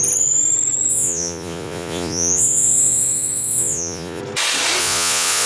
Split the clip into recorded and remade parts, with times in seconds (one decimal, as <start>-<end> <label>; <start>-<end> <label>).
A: 0.0-0.9 recorded; 0.9-4.2 remade; 4.2-4.8 recorded; 4.8-5.5 remade